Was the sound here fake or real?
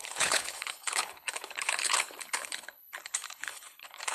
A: fake